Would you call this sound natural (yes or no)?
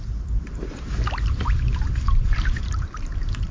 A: no